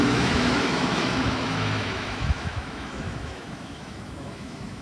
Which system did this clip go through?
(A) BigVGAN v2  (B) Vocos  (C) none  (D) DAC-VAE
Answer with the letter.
D